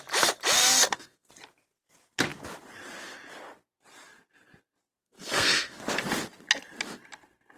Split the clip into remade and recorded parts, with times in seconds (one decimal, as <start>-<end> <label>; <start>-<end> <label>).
0.0-0.6 recorded; 0.6-1.3 remade; 1.3-5.0 recorded; 5.0-5.8 remade; 5.8-7.6 recorded